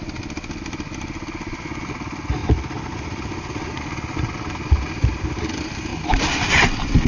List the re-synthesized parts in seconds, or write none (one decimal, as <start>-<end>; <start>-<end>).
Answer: none